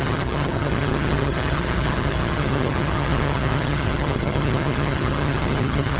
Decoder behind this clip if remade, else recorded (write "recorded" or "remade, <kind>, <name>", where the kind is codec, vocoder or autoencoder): remade, vocoder, HiFi-GAN